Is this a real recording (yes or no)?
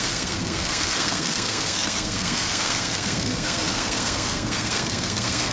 no